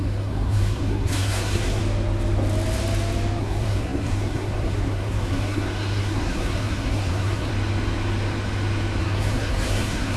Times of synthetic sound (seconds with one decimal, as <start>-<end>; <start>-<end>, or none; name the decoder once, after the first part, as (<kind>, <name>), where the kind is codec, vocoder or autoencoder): 0.0-1.8 (codec, SNAC); 3.4-7.5; 9.0-10.2